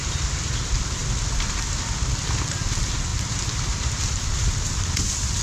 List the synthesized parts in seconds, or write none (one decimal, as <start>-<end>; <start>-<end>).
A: none